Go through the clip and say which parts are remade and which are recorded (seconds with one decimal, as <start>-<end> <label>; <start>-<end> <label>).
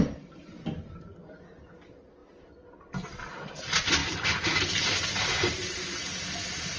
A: 0.0-6.8 recorded